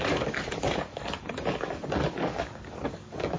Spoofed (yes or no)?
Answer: yes